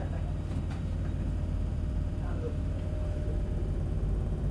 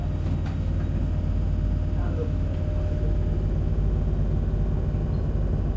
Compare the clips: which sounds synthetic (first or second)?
first